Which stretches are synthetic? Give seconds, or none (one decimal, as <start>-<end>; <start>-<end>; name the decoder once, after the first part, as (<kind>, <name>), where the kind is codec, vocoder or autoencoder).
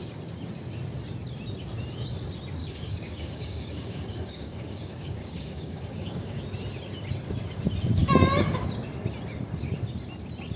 2.6-6.4 (codec, DAC)